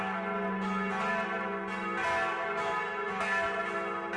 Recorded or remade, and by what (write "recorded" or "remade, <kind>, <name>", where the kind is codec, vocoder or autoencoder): recorded